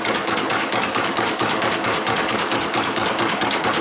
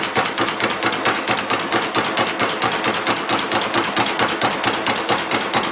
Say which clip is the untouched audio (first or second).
second